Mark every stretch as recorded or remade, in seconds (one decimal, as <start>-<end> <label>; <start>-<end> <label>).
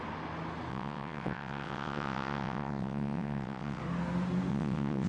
0.0-0.7 recorded; 0.7-3.8 remade; 3.8-4.5 recorded; 4.5-5.1 remade